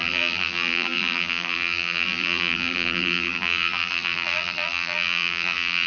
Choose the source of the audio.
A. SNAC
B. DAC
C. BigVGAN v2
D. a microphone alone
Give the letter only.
C